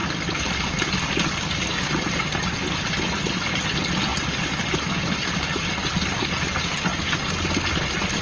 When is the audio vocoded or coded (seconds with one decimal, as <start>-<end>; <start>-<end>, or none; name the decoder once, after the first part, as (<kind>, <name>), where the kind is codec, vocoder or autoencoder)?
none